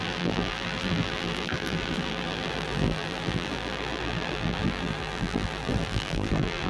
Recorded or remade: remade